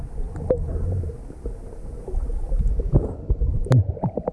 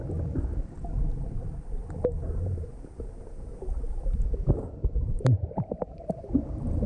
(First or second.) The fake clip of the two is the second